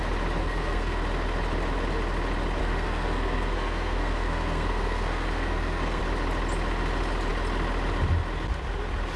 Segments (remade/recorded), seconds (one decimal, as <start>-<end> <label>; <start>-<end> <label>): 0.0-0.4 recorded; 0.4-1.0 remade; 1.0-2.6 recorded; 2.6-6.0 remade; 6.0-9.2 recorded